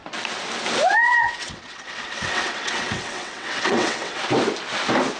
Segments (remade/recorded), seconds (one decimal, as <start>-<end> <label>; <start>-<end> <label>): 0.0-1.1 recorded; 1.1-4.2 remade; 4.2-5.2 recorded